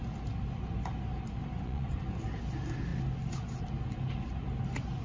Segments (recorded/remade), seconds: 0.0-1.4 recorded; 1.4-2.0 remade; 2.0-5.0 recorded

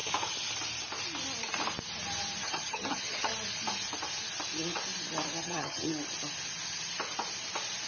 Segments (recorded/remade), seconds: 0.0-2.4 recorded; 2.4-3.3 remade; 3.3-5.4 recorded; 5.4-5.9 remade; 5.9-7.9 recorded